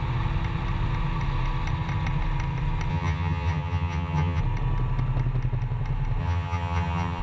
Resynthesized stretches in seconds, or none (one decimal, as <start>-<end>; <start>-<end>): 2.9-4.4; 6.2-7.2